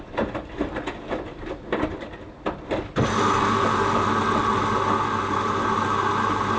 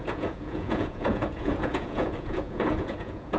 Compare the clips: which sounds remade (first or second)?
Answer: second